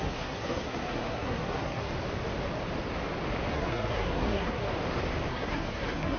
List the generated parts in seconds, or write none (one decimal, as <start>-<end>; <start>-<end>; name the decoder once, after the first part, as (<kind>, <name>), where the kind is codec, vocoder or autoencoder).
0.0-1.9 (codec, SNAC); 3.5-4.7; 5.3-6.2